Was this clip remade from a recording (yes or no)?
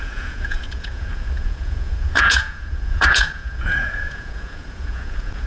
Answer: yes